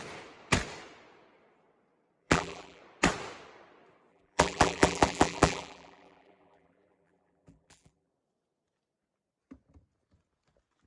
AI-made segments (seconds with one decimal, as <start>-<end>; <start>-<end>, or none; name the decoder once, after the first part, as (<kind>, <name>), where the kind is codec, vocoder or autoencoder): 2.2-2.8 (vocoder, BigVGAN v2); 4.1-8.1